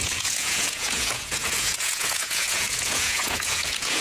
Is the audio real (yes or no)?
no